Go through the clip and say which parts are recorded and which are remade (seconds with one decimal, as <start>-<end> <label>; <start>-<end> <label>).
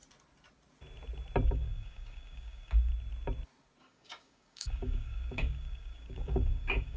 0.0-1.5 recorded; 1.5-2.9 remade; 2.9-3.8 recorded; 3.8-7.0 remade